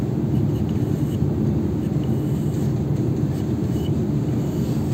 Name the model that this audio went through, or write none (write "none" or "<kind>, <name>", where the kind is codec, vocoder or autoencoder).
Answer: none